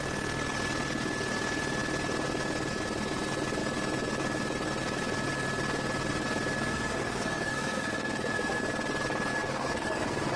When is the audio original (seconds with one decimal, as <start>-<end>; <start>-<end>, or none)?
0.0-6.7; 8.6-9.3